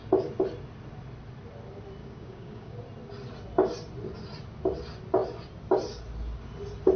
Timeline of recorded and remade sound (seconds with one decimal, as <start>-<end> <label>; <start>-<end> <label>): 0.0-2.0 recorded; 2.0-2.8 remade; 2.8-7.0 recorded